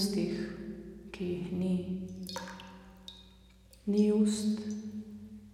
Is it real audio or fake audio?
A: real